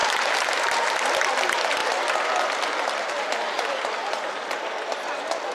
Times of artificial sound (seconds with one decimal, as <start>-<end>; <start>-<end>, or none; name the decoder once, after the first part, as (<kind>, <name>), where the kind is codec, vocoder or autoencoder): 0.0-1.1 (vocoder, BigVGAN v2)